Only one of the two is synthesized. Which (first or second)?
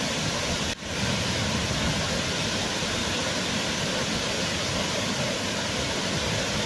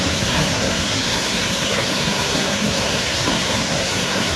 second